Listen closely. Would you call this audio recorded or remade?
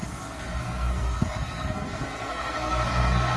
remade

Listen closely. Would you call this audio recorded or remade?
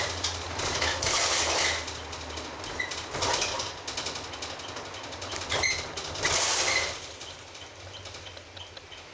recorded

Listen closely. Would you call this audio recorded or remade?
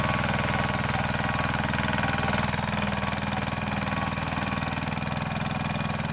recorded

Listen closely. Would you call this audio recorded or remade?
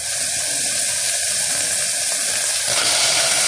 recorded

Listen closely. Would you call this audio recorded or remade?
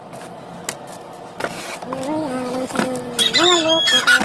recorded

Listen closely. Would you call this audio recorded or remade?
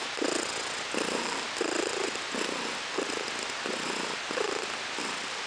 recorded